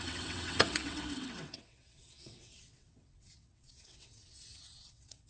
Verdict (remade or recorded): remade